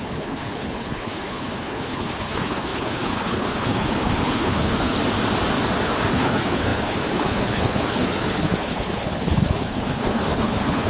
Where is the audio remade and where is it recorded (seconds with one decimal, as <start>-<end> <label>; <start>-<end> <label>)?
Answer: 0.0-5.0 remade; 5.0-6.1 recorded; 6.1-10.9 remade